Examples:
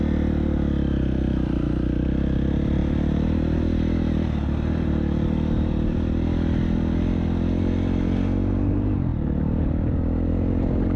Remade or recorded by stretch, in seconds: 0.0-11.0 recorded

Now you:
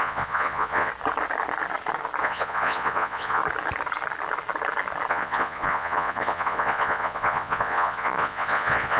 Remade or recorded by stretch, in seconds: 0.0-0.9 remade; 0.9-2.2 recorded; 2.2-3.4 remade; 3.4-5.1 recorded; 5.1-9.0 remade

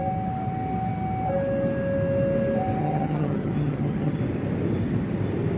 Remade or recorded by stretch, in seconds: 0.0-2.8 recorded; 2.8-4.2 remade; 4.2-5.6 recorded

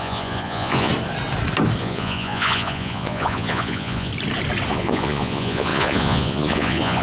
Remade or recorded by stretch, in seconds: 0.0-0.9 remade; 0.9-1.8 recorded; 1.8-4.1 remade; 4.1-4.7 recorded; 4.7-7.0 remade

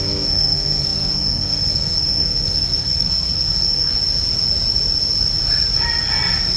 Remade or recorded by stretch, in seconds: 0.0-3.9 remade; 3.9-6.6 recorded